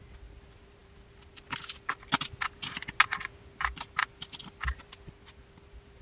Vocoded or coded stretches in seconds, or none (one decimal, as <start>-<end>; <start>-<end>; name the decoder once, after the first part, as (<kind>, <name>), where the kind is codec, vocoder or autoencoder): none